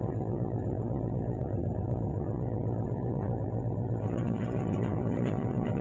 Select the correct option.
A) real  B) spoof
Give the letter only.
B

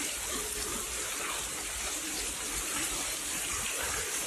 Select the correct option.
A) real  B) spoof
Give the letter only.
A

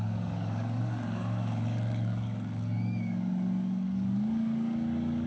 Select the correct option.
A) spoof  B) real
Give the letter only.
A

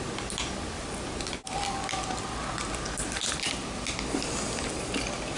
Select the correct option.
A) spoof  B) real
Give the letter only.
B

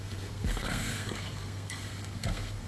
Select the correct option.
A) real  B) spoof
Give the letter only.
B